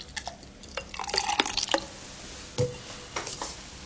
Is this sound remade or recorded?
recorded